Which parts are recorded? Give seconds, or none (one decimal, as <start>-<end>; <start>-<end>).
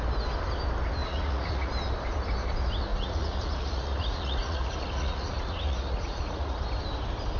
0.0-1.0; 1.7-2.9; 6.6-7.4